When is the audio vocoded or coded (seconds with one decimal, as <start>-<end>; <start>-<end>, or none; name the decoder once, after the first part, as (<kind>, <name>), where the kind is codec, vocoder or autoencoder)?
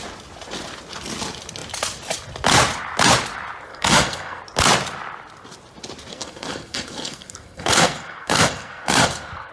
3.7-4.4 (codec, SNAC); 6.1-9.5